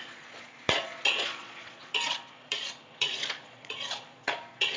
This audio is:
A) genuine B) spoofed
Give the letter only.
B